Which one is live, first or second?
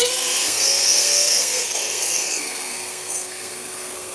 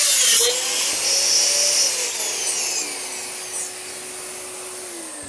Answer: second